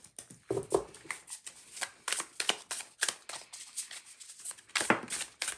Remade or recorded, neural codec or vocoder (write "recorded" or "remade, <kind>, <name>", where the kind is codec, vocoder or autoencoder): recorded